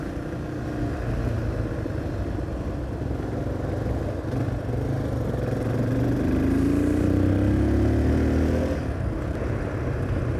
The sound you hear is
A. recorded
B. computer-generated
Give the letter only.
A